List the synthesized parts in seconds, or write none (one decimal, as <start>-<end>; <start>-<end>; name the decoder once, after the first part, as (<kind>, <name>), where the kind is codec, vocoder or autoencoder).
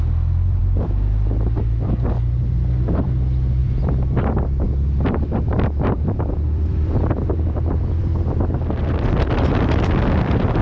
0.0-8.5 (vocoder, BigVGAN v2)